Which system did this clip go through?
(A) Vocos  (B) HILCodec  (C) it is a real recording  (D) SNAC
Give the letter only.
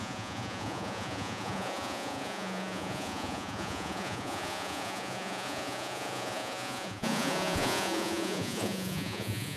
A